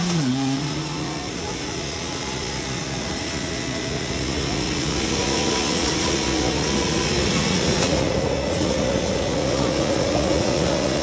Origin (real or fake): fake